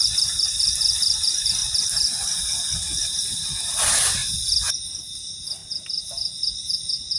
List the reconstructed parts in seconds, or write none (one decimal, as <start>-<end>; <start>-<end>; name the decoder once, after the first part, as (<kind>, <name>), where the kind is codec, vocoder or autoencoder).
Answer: none